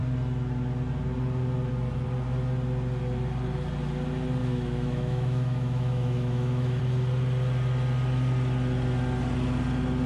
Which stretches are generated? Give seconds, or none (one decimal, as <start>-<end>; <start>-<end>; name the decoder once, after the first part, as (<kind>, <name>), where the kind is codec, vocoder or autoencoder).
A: 4.4-6.8 (autoencoder, DAC-VAE)